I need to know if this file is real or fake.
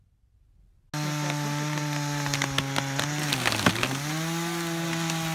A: real